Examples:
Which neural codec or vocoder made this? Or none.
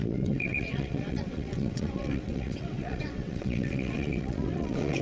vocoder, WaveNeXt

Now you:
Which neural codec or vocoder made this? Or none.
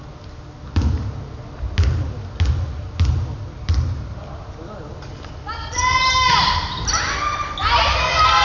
none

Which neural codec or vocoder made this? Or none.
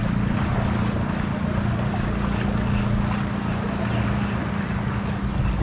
none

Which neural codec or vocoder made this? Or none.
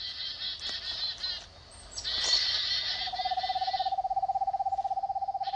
none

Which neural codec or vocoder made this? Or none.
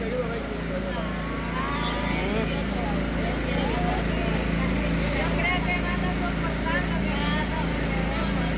none